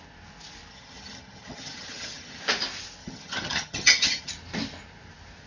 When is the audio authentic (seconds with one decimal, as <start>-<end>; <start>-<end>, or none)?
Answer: 0.0-0.7; 2.4-3.0; 4.3-5.5